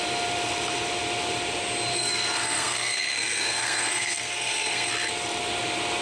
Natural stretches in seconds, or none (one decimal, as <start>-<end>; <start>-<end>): 0.0-1.9; 4.9-6.0